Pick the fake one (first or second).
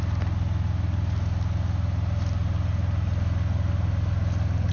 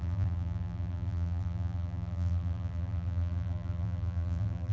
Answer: second